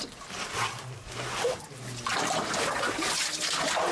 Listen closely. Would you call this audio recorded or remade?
recorded